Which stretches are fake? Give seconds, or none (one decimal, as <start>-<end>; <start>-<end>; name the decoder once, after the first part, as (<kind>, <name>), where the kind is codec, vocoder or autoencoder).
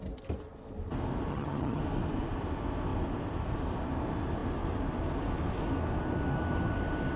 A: 1.3-1.8 (vocoder, HiFi-GAN)